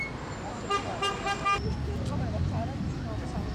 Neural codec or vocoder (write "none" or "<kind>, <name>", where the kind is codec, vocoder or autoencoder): none